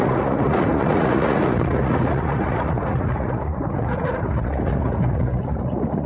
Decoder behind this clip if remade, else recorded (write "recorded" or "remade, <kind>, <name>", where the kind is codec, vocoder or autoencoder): remade, vocoder, Vocos